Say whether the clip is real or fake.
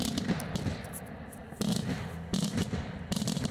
real